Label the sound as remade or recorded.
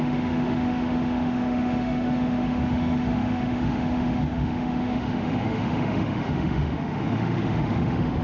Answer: remade